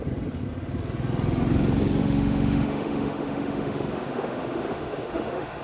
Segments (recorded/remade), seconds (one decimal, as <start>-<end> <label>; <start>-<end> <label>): 0.0-2.0 recorded; 2.0-5.6 remade